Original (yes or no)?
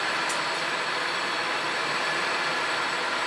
no